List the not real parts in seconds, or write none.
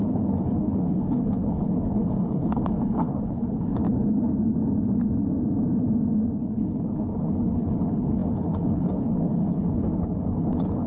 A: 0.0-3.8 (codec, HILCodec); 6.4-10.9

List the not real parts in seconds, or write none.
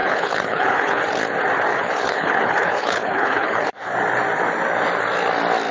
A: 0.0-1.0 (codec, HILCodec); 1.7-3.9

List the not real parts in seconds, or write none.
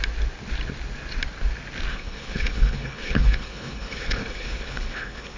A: 1.9-5.4 (codec, HILCodec)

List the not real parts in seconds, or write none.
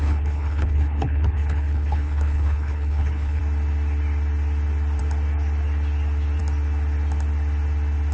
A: 0.0-3.4 (codec, HILCodec)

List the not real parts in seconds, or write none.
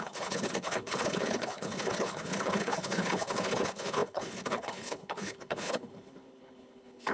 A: 0.0-7.1 (codec, HILCodec)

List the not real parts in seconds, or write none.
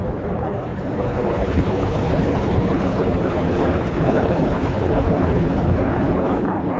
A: 0.0-6.8 (codec, HILCodec)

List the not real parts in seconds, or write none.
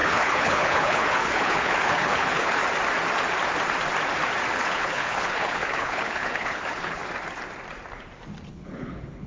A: 0.0-2.6 (codec, HILCodec); 4.5-7.0; 8.5-9.3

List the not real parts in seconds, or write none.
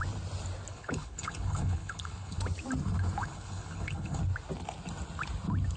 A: 0.7-2.4 (codec, HILCodec); 3.2-4.2